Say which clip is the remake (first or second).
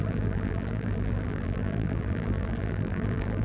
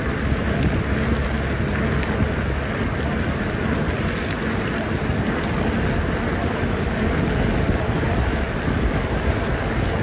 first